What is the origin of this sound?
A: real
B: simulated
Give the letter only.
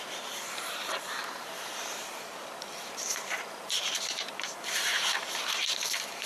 B